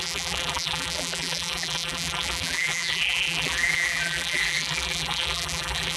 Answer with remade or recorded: remade